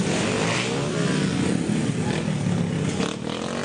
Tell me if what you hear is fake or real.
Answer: real